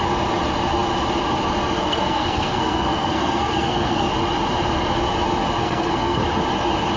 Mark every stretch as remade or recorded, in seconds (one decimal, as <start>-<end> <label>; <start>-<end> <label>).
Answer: 0.0-1.8 recorded; 1.8-4.1 remade; 4.1-5.6 recorded; 5.6-6.2 remade; 6.2-7.0 recorded